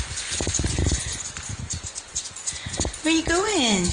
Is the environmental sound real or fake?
fake